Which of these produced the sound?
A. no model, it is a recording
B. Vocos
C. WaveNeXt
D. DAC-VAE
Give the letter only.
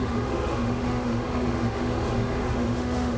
D